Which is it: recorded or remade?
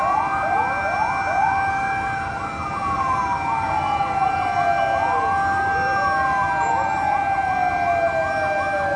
recorded